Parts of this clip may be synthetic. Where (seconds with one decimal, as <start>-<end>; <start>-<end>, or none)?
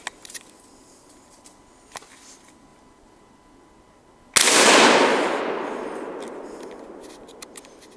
none